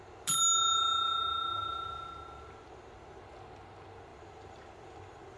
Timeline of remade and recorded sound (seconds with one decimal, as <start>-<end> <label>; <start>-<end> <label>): 0.0-4.1 recorded; 4.1-5.4 remade